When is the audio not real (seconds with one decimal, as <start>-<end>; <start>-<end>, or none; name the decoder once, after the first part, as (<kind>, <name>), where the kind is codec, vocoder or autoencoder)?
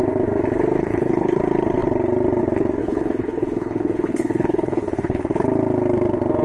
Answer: 0.8-1.4 (codec, HILCodec); 2.8-5.2